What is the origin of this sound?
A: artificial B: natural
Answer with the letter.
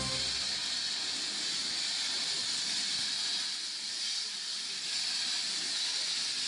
B